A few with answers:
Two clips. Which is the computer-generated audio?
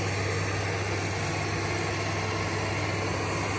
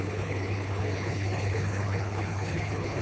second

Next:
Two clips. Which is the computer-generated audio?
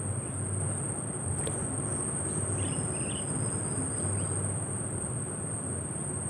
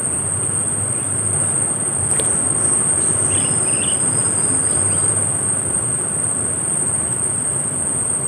second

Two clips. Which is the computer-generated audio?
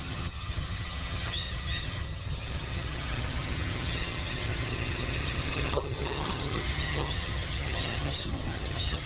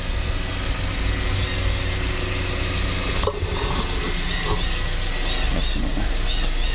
first